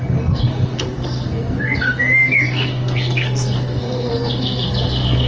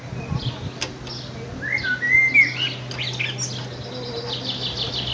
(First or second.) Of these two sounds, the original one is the second